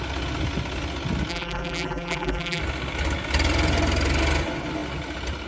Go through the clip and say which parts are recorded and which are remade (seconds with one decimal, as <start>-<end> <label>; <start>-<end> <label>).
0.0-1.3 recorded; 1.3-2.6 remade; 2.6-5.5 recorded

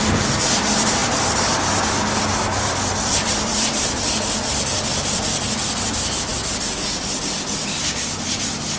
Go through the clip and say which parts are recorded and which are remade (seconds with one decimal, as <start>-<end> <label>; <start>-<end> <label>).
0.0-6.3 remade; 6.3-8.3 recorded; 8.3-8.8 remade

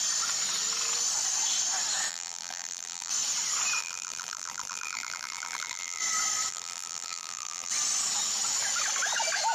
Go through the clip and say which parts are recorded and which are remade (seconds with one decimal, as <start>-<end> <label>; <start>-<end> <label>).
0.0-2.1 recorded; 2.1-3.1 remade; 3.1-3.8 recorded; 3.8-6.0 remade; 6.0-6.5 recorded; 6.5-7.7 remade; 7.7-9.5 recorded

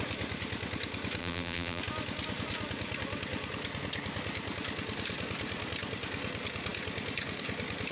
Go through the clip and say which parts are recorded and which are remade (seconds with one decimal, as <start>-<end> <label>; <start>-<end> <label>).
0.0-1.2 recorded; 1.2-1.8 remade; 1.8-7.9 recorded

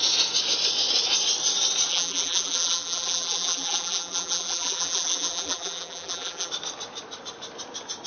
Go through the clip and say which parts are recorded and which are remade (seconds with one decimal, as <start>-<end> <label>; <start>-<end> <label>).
0.0-1.9 recorded; 1.9-6.5 remade; 6.5-8.1 recorded

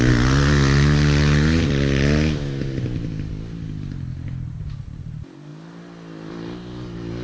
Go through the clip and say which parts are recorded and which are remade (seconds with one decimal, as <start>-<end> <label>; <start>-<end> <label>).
0.0-7.2 recorded